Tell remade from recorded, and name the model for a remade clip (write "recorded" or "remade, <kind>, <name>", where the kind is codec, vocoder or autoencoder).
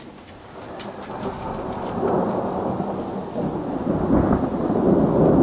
recorded